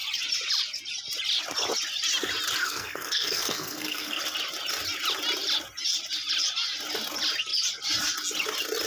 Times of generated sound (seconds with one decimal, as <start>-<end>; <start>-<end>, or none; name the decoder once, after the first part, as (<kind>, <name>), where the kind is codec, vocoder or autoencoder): 2.6-4.2 (codec, SNAC)